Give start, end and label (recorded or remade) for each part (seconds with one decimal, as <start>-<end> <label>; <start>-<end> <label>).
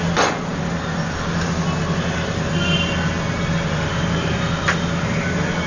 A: 0.0-5.7 recorded